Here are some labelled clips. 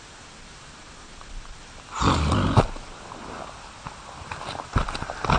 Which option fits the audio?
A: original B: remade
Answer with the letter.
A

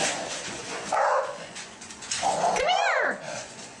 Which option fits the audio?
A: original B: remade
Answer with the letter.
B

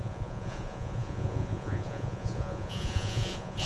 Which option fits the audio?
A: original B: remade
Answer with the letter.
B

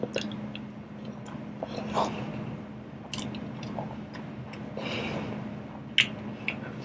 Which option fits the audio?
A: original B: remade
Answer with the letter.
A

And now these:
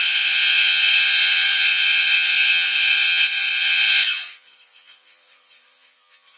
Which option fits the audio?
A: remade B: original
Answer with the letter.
A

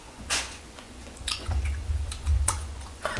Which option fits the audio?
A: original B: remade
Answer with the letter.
B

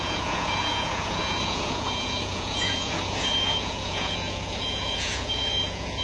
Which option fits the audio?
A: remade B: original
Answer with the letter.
A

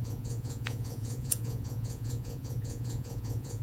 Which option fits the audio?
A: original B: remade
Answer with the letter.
B